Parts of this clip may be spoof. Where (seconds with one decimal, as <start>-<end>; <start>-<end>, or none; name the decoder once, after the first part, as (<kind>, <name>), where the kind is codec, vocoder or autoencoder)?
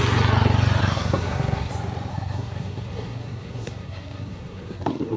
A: 0.8-1.7 (codec, SNAC); 2.1-5.2